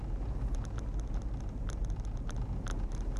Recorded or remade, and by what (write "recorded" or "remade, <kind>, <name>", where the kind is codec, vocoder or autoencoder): recorded